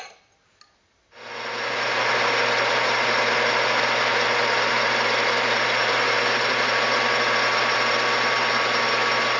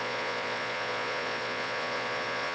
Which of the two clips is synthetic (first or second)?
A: second